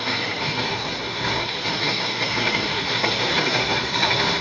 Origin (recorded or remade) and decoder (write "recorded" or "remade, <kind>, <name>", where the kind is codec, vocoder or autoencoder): remade, codec, SNAC